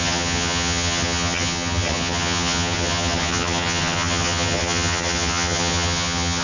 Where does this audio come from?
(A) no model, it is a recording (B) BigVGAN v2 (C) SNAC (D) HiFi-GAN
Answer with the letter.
D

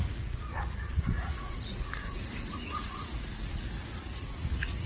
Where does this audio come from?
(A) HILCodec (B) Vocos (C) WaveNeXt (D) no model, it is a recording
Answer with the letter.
B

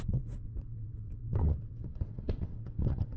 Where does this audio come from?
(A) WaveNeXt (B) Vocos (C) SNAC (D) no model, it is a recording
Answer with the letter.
A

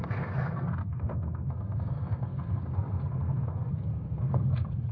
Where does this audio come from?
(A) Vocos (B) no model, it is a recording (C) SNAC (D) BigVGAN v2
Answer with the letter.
C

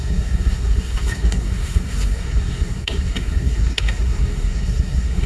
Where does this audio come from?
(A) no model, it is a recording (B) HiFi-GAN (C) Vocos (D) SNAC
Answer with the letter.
D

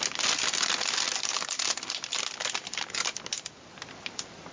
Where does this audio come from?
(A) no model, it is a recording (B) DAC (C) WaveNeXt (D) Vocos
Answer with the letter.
A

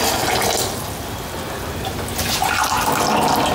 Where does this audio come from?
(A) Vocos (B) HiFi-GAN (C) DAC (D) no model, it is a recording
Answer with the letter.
D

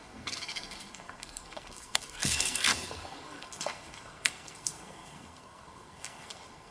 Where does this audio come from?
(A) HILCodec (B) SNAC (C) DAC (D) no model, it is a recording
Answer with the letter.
B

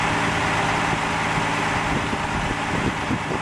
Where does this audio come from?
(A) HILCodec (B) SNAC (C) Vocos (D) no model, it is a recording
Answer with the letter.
D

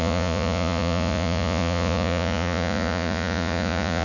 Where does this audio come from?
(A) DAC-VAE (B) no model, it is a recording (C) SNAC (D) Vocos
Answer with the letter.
D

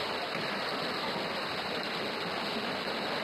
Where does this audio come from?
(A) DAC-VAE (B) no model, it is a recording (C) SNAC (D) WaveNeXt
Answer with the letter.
B